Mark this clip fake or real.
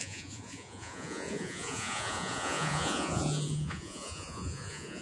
fake